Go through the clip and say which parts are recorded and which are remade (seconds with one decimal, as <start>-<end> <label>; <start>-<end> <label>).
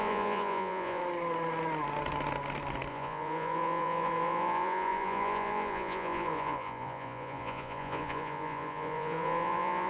0.0-1.0 remade; 1.0-2.9 recorded; 2.9-9.9 remade